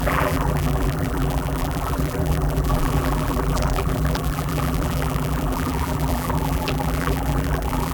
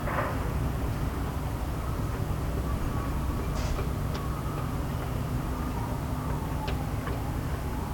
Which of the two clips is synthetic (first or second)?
first